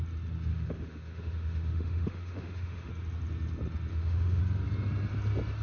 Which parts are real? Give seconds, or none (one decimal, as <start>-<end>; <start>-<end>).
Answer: 0.0-0.5; 2.9-3.9; 4.4-5.6